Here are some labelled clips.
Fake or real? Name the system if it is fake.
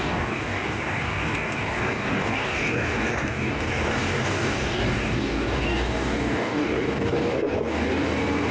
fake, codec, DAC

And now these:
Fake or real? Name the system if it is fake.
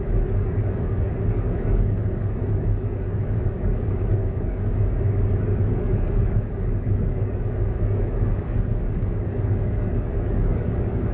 fake, codec, DAC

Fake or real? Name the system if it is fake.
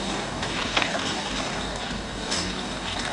fake, codec, DAC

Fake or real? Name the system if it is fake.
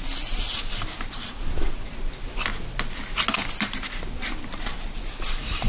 real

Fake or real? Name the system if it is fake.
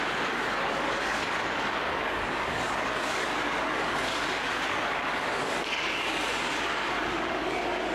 fake, codec, DAC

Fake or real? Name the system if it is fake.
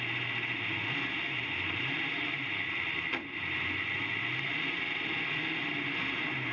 real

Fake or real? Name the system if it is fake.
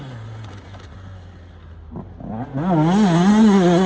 real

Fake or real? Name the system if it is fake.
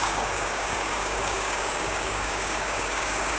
fake, codec, DAC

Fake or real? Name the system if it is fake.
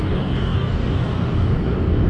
fake, codec, DAC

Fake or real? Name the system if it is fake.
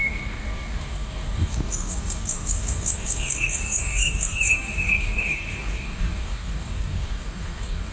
fake, codec, DAC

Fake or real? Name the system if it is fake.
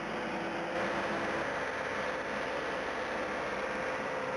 real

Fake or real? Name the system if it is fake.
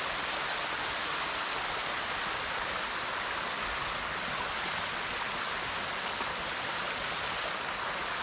real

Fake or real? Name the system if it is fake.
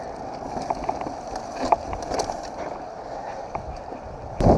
real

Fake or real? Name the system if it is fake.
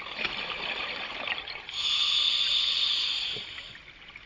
real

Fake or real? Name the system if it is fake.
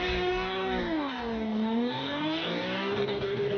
fake, codec, DAC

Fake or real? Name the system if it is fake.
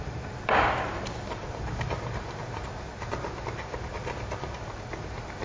real